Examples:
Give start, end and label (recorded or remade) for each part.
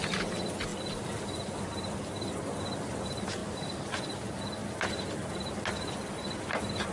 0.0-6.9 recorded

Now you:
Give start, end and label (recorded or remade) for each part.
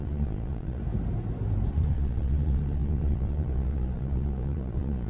0.0-0.8 remade; 0.8-1.7 recorded; 1.7-5.1 remade